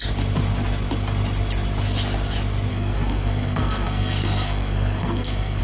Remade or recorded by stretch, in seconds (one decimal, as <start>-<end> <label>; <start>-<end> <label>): 0.0-2.7 recorded; 2.7-5.6 remade